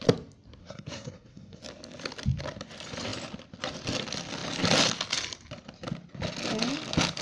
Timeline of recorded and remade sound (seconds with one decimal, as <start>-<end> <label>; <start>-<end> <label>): 0.0-0.6 recorded; 0.6-1.6 remade; 1.6-7.2 recorded